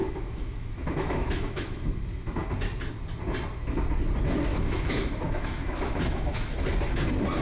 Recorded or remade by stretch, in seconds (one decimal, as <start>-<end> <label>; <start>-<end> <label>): 0.0-2.0 remade; 2.0-4.5 recorded; 4.5-6.5 remade; 6.5-7.4 recorded